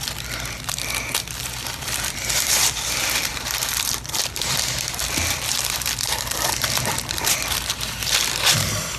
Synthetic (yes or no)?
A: yes